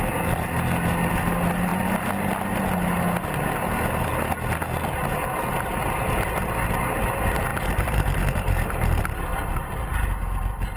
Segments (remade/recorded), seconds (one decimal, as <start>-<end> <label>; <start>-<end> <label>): 0.0-7.5 recorded; 7.5-8.2 remade; 8.2-10.8 recorded